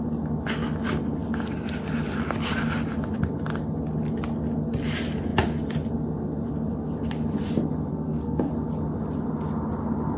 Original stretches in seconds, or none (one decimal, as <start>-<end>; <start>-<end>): 0.0-7.9; 8.5-10.2